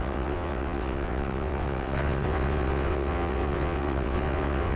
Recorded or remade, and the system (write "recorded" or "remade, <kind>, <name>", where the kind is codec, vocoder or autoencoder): remade, vocoder, WaveNeXt